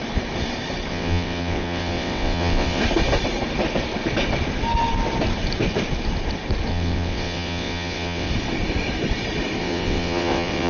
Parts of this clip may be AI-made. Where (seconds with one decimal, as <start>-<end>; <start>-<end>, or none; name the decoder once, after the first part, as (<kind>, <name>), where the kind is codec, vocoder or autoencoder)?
0.9-2.8 (vocoder, WaveNeXt); 6.7-8.3; 9.6-10.7